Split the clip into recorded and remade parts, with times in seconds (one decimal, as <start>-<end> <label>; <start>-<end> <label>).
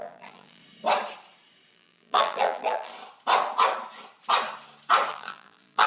0.0-0.6 remade; 0.6-1.7 recorded; 1.7-2.9 remade; 2.9-5.1 recorded; 5.1-5.9 remade